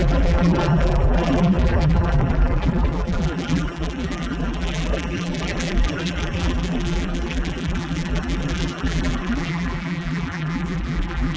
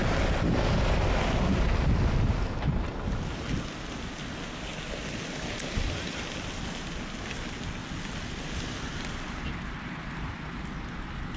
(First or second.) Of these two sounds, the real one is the second